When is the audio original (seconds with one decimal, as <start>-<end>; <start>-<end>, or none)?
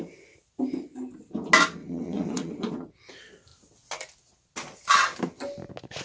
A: 0.0-1.8; 2.9-6.0